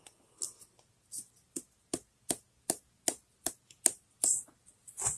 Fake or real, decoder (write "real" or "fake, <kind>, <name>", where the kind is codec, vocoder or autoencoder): real